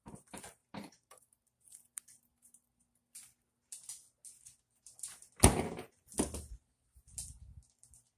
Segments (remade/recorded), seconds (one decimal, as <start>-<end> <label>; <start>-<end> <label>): 0.0-0.6 recorded; 0.6-1.2 remade; 1.2-8.2 recorded